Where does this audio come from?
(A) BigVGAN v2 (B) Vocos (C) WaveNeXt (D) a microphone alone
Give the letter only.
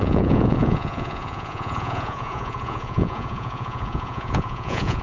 B